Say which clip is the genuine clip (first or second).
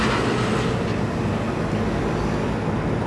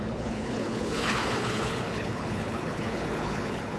first